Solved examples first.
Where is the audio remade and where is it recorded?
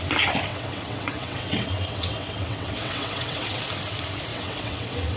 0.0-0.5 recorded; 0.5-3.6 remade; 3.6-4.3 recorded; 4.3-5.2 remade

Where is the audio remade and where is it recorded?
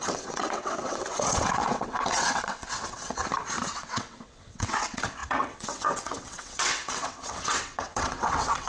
0.0-3.2 remade; 3.2-3.7 recorded; 3.7-8.7 remade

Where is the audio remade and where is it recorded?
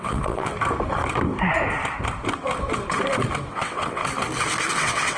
0.0-0.5 remade; 0.5-3.5 recorded; 3.5-4.0 remade; 4.0-4.7 recorded; 4.7-5.2 remade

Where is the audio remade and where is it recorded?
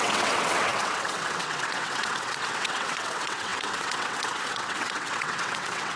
0.0-6.0 remade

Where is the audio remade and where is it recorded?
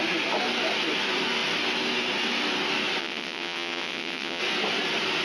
0.0-3.0 recorded; 3.0-4.4 remade; 4.4-5.2 recorded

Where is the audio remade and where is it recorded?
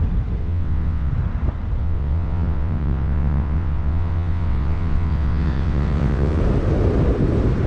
0.0-0.4 recorded; 0.4-1.1 remade; 1.1-1.8 recorded; 1.8-6.4 remade; 6.4-7.7 recorded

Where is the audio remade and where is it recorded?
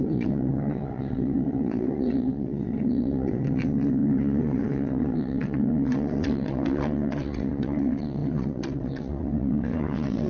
0.0-10.3 remade